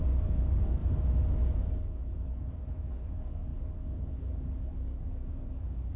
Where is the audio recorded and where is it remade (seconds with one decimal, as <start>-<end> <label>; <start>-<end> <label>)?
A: 0.0-0.8 remade; 0.8-1.7 recorded; 1.7-6.0 remade